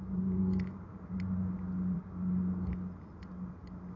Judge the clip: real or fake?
real